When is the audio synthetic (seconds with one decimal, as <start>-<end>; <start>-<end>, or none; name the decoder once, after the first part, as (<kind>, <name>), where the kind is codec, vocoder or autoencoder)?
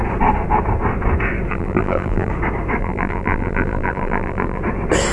1.5-2.3 (vocoder, BigVGAN v2); 2.8-4.6